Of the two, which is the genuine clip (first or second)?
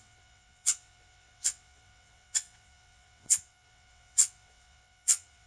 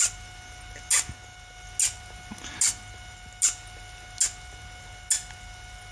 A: second